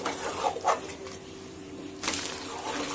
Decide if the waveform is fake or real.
real